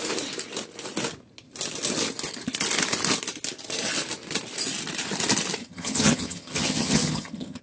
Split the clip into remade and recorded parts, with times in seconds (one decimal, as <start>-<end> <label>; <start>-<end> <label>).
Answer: 0.0-5.6 recorded; 5.6-7.6 remade